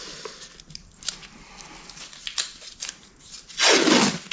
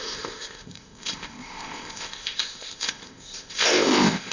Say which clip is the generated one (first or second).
second